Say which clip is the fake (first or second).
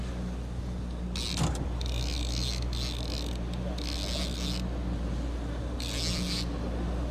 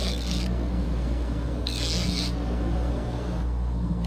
second